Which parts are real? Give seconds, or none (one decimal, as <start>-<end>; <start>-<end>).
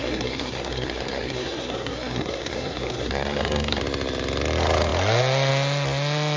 3.8-6.4